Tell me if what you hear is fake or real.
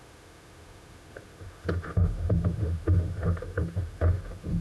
fake